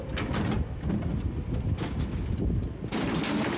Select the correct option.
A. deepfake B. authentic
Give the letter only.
B